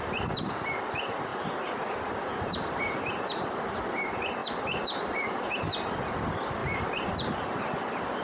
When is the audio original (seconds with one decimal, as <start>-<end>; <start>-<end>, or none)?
0.0-1.3; 3.0-4.4; 5.6-6.6; 7.3-8.2